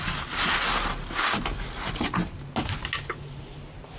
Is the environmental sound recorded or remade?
recorded